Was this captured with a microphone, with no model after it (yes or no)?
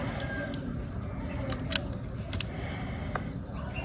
yes